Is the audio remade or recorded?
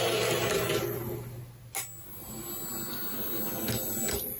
recorded